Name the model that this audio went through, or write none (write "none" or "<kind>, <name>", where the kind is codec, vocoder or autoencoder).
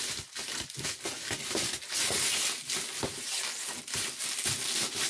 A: none